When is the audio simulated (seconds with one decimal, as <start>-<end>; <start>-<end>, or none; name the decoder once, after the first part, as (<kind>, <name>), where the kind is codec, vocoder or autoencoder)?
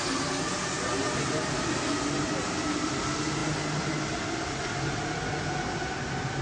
none